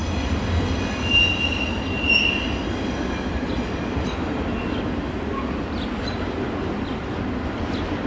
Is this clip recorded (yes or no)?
yes